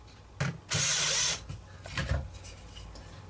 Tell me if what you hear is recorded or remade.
recorded